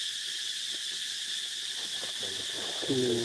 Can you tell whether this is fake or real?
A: real